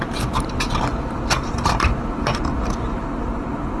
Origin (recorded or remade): recorded